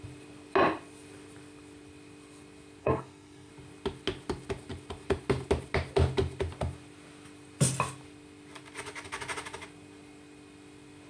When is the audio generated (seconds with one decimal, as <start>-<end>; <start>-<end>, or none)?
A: 2.8-3.5